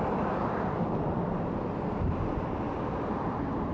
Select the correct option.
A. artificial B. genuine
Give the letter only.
B